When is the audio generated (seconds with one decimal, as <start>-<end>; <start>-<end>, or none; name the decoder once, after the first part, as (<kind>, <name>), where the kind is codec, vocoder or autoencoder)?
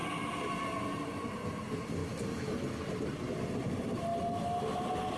none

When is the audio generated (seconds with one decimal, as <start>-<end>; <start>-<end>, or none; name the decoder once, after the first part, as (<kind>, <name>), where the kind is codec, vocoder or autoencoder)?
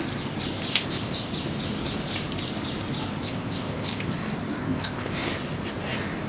0.7-1.3 (codec, ZipCodec); 3.2-4.1; 4.6-5.3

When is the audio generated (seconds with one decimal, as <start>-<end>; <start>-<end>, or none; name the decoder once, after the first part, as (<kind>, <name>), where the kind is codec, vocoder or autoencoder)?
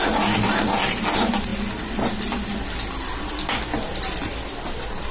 none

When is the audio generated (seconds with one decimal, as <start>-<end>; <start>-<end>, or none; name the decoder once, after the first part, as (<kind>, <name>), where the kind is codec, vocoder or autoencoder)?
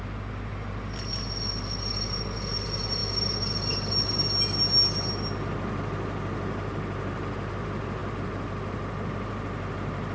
none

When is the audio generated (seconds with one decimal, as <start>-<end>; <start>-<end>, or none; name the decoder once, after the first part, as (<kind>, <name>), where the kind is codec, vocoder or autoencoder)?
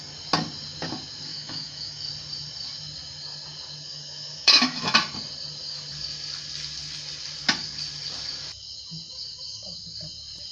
1.3-2.1 (autoencoder, DAC-VAE); 3.9-4.9